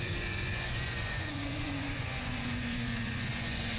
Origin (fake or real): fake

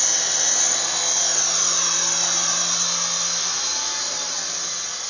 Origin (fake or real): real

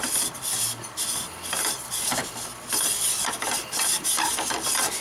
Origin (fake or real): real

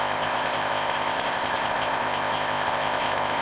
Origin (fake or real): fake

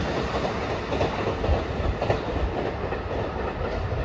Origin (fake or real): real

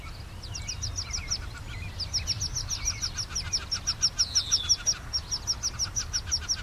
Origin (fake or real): real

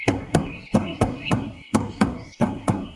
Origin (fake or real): fake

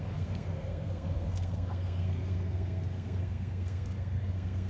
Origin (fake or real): fake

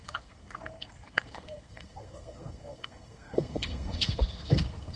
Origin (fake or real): fake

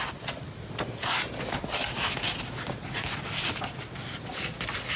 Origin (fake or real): real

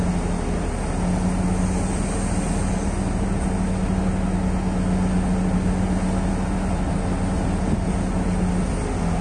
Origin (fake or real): real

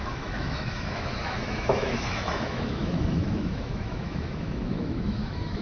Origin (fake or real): fake